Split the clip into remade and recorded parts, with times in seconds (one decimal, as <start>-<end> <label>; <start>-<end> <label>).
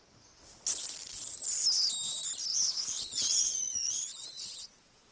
0.0-2.5 recorded; 2.5-5.1 remade